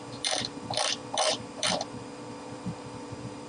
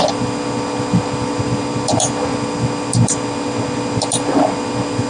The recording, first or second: second